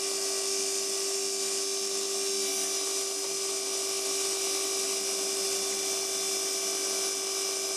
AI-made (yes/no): no